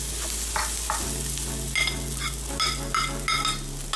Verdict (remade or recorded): recorded